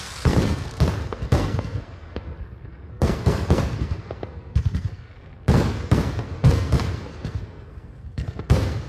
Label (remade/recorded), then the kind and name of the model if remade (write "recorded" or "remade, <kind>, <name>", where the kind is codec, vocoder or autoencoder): remade, codec, SNAC